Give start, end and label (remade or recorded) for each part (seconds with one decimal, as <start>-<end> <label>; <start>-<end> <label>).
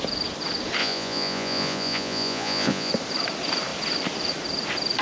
0.0-0.8 recorded; 0.8-2.9 remade; 2.9-5.0 recorded